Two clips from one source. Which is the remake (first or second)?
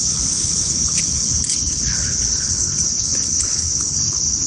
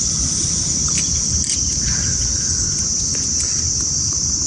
first